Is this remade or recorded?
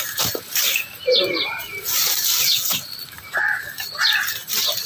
remade